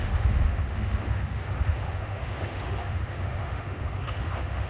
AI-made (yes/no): yes